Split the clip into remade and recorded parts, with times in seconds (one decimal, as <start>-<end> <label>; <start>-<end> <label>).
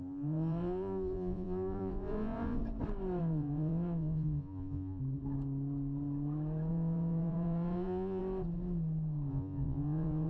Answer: 0.0-2.6 remade; 2.6-3.2 recorded; 3.2-5.0 remade; 5.0-6.7 recorded; 6.7-8.2 remade; 8.2-9.3 recorded; 9.3-10.3 remade